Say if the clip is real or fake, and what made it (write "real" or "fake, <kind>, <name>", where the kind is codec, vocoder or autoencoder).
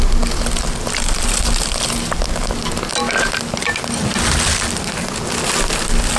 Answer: real